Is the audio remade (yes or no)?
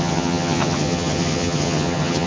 yes